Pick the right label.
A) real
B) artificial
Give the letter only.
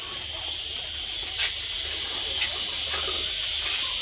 A